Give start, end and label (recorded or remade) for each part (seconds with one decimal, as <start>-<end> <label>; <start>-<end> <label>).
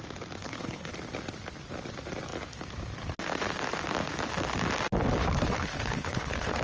0.0-0.4 recorded; 0.4-0.9 remade; 0.9-5.2 recorded; 5.2-6.6 remade